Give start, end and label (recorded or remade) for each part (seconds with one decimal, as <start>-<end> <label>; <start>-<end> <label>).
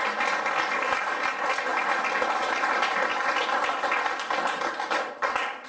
0.0-5.7 recorded